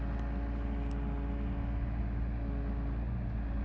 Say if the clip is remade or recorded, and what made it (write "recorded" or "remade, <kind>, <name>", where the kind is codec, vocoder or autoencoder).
recorded